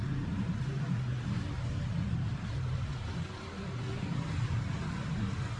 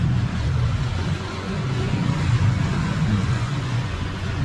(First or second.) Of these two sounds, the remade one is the second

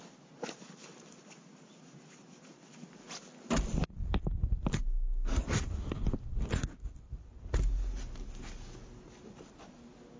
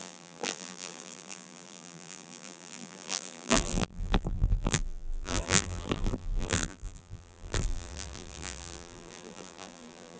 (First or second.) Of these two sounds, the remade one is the second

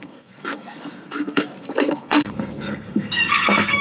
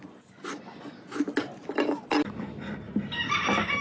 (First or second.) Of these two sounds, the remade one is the first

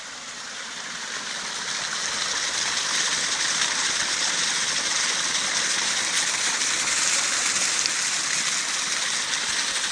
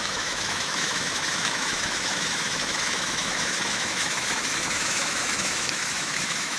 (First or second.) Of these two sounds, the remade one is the second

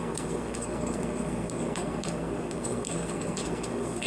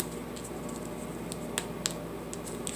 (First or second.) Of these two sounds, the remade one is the first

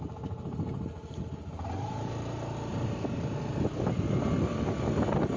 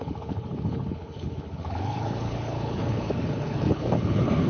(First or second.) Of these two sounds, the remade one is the second